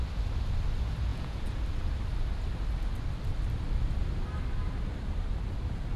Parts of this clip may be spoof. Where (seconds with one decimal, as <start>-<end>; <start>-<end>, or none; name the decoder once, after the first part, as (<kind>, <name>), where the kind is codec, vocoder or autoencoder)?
1.1-1.6 (vocoder, Vocos)